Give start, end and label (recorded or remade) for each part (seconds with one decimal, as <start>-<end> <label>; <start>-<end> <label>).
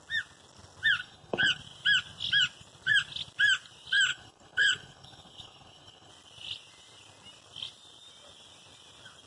0.0-1.0 recorded; 1.0-1.6 remade; 1.6-4.1 recorded; 4.1-6.1 remade; 6.1-9.3 recorded